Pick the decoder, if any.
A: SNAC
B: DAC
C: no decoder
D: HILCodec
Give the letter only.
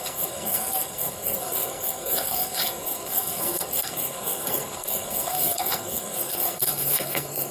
A